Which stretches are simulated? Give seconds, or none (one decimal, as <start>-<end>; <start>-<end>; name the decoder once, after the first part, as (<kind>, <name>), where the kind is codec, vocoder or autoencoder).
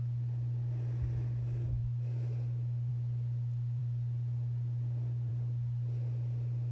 none